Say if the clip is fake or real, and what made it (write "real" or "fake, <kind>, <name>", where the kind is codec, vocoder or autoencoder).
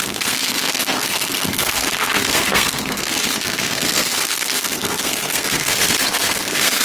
fake, codec, SNAC